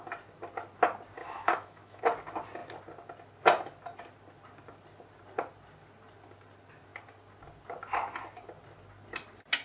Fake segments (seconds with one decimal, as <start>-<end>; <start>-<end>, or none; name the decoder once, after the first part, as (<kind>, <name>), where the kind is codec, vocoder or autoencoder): 1.2-2.0 (autoencoder, DAC-VAE)